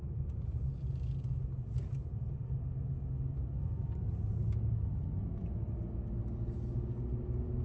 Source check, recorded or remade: recorded